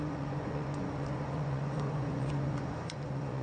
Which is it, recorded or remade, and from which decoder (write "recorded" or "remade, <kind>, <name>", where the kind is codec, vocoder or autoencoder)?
remade, vocoder, Vocos